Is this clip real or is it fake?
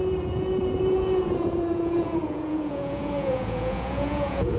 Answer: fake